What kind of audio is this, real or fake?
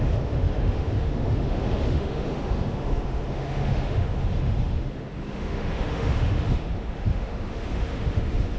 fake